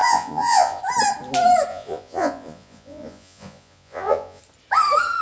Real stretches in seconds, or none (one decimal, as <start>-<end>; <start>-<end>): 0.8-1.7; 4.4-5.2